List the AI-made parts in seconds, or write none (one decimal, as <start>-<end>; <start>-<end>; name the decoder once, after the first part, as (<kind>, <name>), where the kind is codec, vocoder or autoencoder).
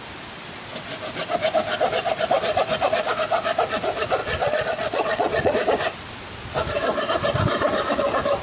4.2-5.5 (vocoder, Vocos)